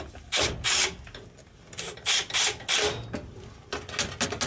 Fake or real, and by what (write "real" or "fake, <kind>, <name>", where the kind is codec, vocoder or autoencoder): real